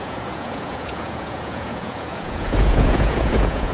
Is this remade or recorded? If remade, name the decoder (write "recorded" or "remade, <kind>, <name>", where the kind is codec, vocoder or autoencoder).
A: remade, vocoder, Vocos